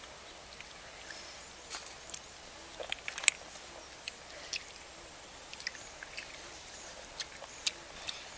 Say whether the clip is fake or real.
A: real